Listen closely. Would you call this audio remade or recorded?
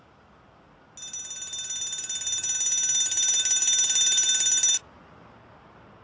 recorded